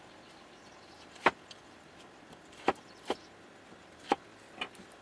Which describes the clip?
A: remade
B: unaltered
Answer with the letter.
B